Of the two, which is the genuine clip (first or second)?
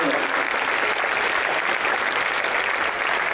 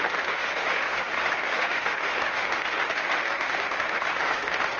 first